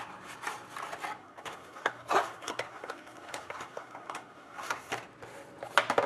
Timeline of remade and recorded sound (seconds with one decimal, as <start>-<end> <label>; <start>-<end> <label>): 0.0-1.2 recorded; 1.2-4.9 remade; 4.9-6.1 recorded